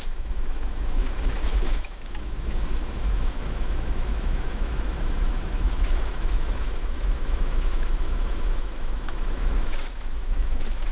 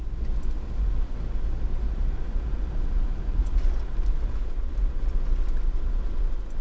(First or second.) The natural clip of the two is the second